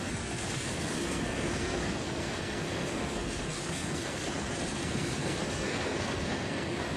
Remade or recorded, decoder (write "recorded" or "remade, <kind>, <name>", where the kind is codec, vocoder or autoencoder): remade, codec, SNAC